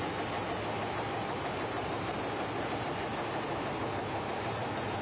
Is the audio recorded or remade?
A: recorded